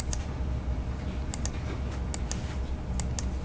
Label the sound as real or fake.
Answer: real